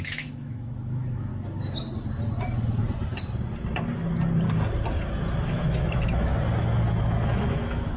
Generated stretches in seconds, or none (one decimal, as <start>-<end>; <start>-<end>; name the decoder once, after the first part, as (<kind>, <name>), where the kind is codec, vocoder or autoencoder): 0.0-1.3 (autoencoder, DAC-VAE); 5.5-6.3; 7.0-8.0